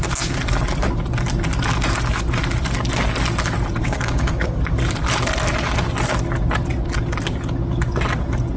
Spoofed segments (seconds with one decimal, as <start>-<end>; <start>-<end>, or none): 3.8-4.6